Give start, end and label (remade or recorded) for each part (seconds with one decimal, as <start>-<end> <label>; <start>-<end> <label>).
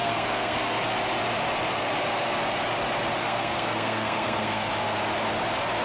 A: 0.0-0.6 remade; 0.6-3.2 recorded; 3.2-4.7 remade; 4.7-5.8 recorded